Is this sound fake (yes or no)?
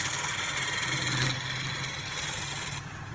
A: no